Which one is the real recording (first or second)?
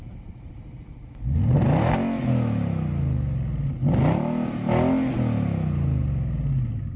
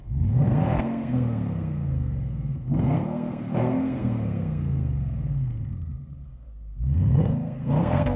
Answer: first